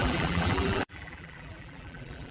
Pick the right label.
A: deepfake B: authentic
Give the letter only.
A